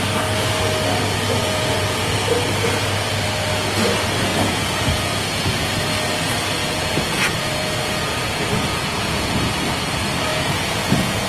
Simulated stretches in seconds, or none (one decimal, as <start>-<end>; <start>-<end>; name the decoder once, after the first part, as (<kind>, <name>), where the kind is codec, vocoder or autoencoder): 1.4-2.1 (vocoder, Vocos); 4.3-5.8; 6.6-9.5; 10.3-11.3